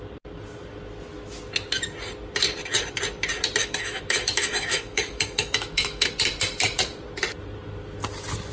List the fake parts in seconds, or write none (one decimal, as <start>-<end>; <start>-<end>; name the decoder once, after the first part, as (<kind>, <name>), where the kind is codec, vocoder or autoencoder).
3.6-6.1 (autoencoder, DAC-VAE)